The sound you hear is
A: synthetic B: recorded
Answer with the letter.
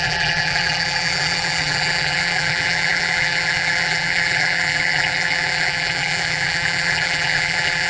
A